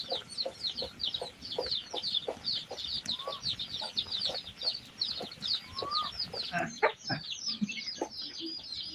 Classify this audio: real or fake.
real